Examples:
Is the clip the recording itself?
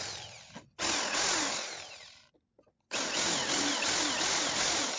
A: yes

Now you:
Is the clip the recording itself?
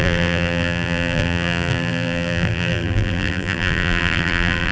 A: no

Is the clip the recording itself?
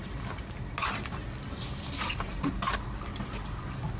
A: yes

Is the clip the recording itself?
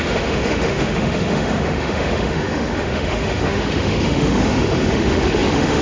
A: no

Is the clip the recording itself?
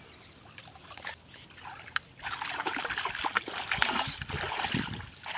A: yes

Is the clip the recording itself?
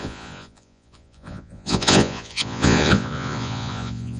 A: no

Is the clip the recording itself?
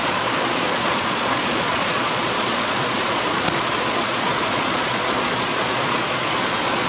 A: no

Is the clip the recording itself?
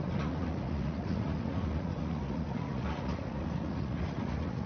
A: no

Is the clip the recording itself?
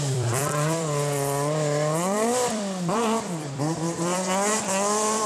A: no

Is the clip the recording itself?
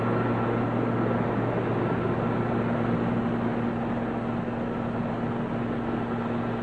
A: yes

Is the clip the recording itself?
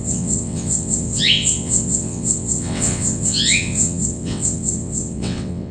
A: no